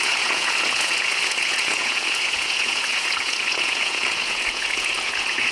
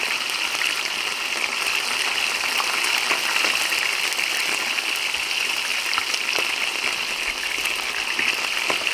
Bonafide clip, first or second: second